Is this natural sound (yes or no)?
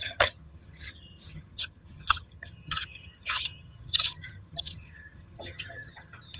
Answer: no